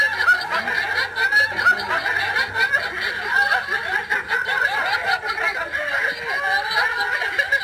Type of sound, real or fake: real